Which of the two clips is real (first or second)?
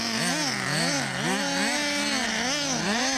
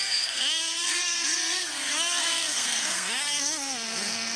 first